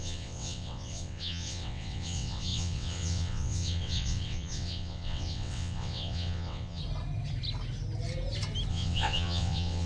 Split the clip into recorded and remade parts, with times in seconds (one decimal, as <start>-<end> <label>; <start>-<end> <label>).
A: 0.0-6.8 remade; 6.8-8.7 recorded; 8.7-9.9 remade